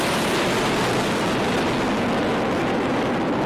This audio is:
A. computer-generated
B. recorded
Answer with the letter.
B